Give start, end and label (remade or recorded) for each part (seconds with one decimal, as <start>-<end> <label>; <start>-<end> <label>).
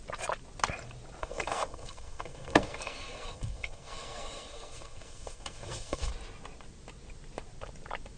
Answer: 0.0-1.2 recorded; 1.2-6.1 remade; 6.1-8.2 recorded